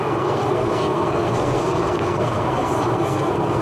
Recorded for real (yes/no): no